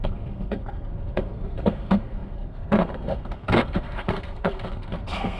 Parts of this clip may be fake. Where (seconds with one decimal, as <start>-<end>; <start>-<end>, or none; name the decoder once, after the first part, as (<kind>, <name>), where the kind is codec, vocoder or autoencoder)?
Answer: 0.0-5.4 (codec, SNAC)